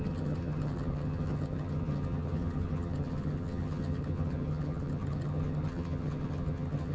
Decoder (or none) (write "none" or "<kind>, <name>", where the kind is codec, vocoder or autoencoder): vocoder, HiFi-GAN